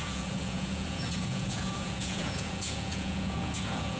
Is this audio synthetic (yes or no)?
yes